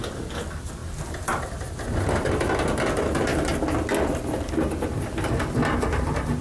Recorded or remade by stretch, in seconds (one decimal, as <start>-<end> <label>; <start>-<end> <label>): 0.0-6.4 recorded